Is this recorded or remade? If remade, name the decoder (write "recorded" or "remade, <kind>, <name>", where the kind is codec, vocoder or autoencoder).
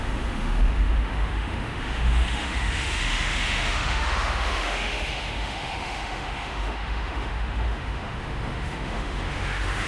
remade, autoencoder, DAC-VAE